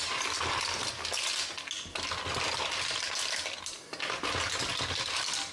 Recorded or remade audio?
recorded